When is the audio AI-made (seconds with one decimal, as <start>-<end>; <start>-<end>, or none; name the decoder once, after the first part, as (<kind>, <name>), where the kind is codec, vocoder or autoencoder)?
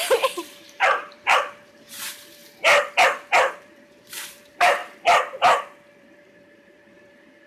0.0-2.4 (vocoder, BigVGAN v2); 3.5-4.8; 6.0-7.5